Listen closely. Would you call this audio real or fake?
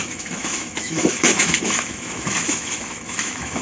fake